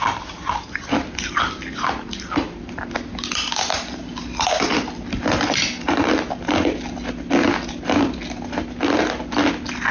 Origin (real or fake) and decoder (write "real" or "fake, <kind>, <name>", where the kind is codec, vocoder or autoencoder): real